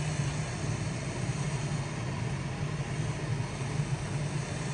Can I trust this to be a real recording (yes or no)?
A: yes